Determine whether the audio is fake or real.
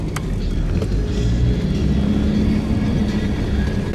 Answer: real